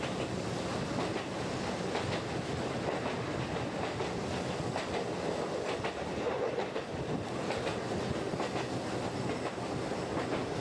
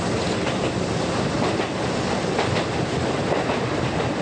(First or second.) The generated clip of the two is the second